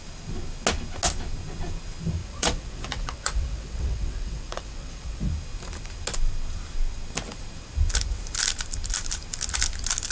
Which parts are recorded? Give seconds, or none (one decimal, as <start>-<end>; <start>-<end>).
0.0-2.2; 5.3-10.1